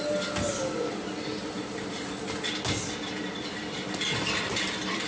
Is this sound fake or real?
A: real